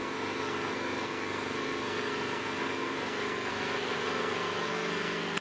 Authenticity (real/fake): fake